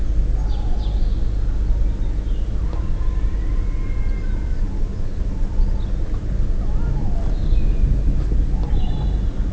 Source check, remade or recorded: recorded